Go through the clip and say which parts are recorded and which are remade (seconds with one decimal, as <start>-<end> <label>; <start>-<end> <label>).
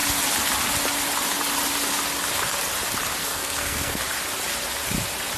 0.0-3.2 recorded; 3.2-4.0 remade; 4.0-5.4 recorded